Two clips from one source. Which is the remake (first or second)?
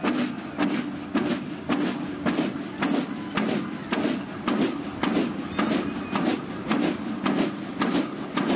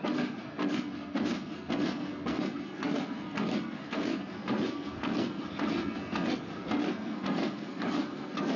second